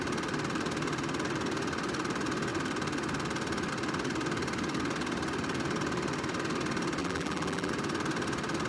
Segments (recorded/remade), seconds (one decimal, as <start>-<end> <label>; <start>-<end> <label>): 0.0-7.0 recorded; 7.0-7.7 remade; 7.7-8.7 recorded